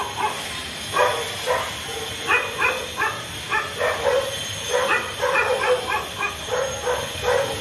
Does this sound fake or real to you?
real